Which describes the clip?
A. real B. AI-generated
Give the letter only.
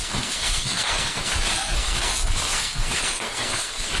B